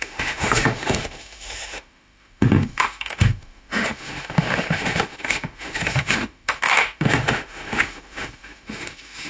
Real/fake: fake